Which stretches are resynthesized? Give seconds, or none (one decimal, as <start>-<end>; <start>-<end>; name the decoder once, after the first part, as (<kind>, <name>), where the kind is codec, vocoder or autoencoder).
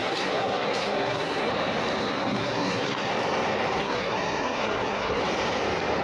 0.0-1.5 (codec, SNAC); 2.0-3.1; 3.8-5.2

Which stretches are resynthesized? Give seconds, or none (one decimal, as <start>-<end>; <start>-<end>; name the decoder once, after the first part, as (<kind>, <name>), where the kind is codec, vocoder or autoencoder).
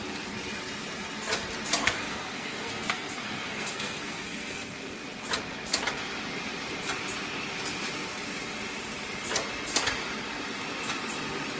1.8-5.0 (codec, SNAC)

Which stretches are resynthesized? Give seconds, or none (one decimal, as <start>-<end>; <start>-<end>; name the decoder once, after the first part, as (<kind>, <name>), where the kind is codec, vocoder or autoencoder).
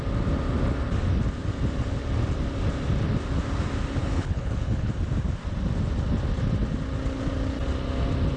4.0-4.9 (codec, HILCodec)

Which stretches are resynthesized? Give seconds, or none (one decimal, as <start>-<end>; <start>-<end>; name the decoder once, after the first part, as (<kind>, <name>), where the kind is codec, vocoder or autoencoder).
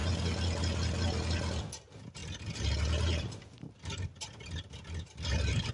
2.2-5.7 (vocoder, BigVGAN v2)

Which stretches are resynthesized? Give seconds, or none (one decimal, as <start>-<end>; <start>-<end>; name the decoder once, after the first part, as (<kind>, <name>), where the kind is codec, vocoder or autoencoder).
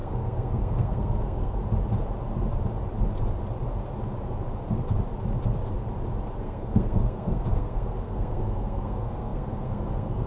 0.0-1.6 (codec, SNAC); 6.4-10.3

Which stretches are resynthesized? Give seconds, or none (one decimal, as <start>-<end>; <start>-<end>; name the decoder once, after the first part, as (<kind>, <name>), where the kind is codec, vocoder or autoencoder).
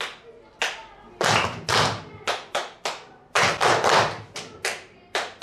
none